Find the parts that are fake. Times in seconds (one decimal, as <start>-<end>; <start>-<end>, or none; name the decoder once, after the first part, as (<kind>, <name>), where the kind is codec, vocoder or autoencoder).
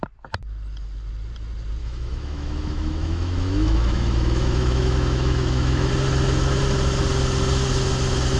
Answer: 1.8-5.9 (autoencoder, DAC-VAE)